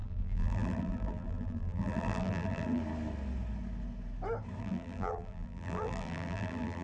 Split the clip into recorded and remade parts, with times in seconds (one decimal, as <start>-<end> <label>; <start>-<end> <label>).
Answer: 0.0-2.8 remade; 2.8-4.6 recorded; 4.6-6.8 remade